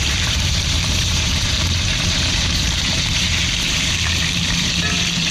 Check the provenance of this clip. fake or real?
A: fake